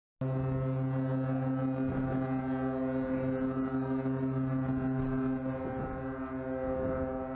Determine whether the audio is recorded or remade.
recorded